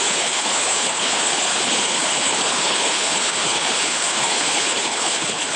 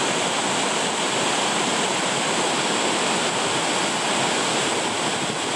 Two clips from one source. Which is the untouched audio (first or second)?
second